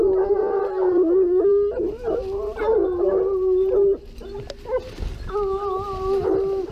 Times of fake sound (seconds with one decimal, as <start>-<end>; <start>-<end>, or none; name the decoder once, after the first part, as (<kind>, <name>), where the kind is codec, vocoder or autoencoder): none